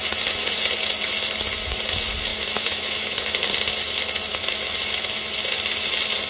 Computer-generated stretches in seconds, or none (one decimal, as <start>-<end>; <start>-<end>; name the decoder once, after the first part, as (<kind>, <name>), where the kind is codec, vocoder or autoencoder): 2.3-3.5 (autoencoder, DAC-VAE); 4.3-5.2